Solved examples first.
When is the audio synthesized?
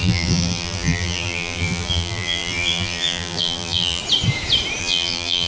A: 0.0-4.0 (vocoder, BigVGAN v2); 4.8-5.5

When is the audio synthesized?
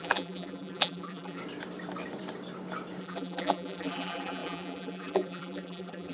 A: 0.0-1.4 (vocoder, BigVGAN v2); 3.0-6.1